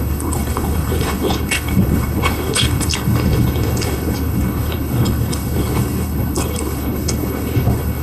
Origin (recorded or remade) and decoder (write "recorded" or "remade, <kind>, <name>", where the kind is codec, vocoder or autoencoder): remade, codec, HILCodec